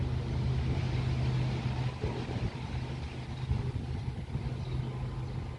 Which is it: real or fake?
real